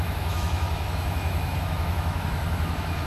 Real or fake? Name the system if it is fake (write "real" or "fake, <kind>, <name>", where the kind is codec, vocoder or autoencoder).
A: fake, autoencoder, DAC-VAE